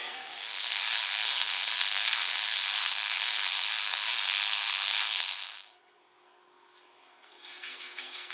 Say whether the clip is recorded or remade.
remade